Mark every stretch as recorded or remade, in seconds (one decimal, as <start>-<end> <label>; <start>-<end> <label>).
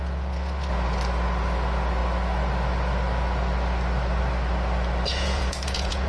0.0-5.1 recorded; 5.1-6.1 remade